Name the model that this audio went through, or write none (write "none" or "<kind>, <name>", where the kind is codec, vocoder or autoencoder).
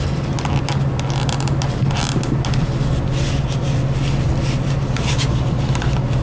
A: none